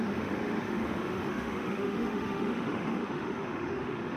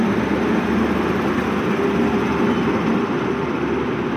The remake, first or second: first